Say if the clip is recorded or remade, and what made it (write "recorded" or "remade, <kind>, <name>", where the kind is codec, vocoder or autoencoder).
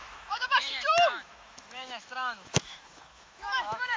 remade, autoencoder, DAC-VAE